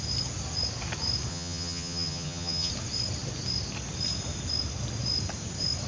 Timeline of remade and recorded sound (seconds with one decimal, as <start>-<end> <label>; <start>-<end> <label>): 0.0-1.3 recorded; 1.3-2.7 remade; 2.7-5.9 recorded